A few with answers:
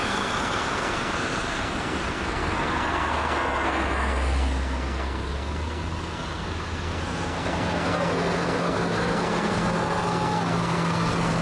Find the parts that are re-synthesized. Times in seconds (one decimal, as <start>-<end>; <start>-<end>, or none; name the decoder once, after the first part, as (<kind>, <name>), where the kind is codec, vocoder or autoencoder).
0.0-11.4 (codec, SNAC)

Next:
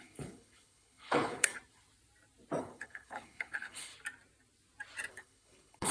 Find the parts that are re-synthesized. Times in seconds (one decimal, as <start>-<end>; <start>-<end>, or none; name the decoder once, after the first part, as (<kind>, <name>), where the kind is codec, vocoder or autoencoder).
0.0-1.5 (codec, HILCodec); 2.6-3.9; 5.1-5.9

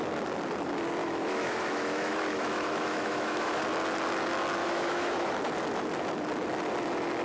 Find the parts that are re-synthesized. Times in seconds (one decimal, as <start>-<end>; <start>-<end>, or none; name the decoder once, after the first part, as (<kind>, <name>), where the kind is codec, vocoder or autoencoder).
1.0-3.6 (autoencoder, DAC-VAE); 4.6-5.3